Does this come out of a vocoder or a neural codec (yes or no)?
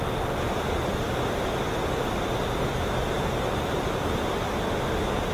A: no